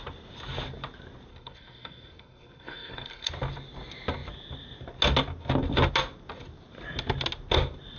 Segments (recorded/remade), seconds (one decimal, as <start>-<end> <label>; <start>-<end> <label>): 0.0-1.3 recorded; 1.3-3.3 remade; 3.3-8.0 recorded